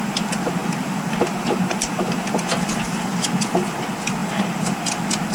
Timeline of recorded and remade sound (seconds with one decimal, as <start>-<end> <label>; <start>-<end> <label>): 0.0-0.6 recorded; 0.6-2.3 remade; 2.3-4.2 recorded; 4.2-4.8 remade; 4.8-5.3 recorded